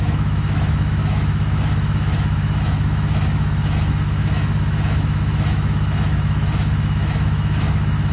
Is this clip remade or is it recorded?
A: remade